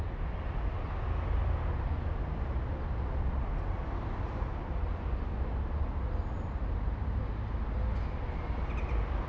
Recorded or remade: recorded